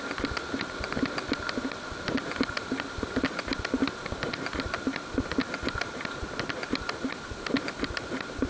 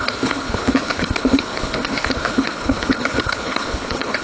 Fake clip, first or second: second